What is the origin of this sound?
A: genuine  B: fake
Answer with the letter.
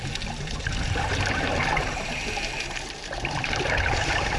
B